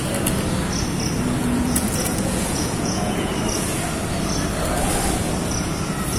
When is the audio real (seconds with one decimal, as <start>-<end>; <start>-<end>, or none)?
0.0-1.4; 3.3-6.2